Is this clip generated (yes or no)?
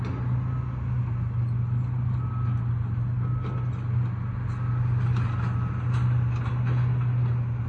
no